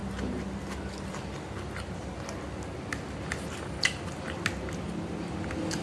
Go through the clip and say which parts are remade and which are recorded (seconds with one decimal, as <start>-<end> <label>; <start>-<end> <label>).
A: 0.0-5.8 recorded